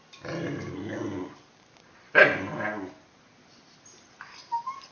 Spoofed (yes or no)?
no